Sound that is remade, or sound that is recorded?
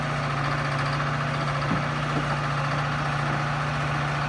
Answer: recorded